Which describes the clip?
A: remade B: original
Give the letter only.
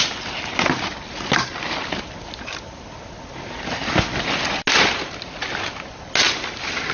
B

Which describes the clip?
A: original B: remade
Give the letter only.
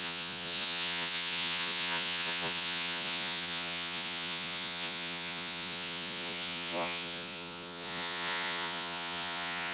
B